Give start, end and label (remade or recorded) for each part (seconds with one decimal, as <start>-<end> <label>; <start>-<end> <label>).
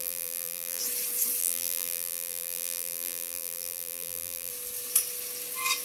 0.0-0.8 remade; 0.8-1.4 recorded; 1.4-4.5 remade; 4.5-5.8 recorded